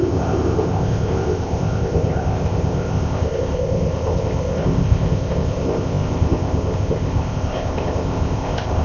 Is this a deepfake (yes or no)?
yes